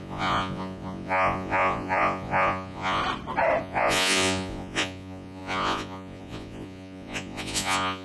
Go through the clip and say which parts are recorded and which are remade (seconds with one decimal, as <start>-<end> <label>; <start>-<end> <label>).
0.0-3.0 remade; 3.0-3.6 recorded; 3.6-8.0 remade